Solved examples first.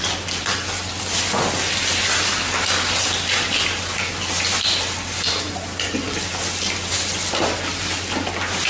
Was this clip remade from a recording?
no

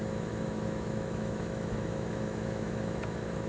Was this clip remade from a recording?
yes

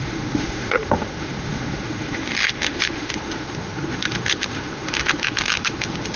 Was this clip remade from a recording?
yes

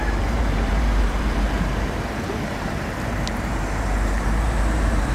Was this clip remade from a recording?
yes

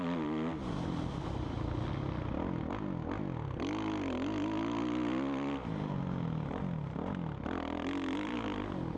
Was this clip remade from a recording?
no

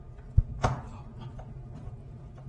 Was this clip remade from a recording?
no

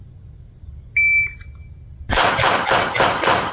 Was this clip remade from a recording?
no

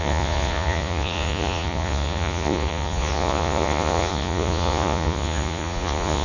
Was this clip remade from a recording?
yes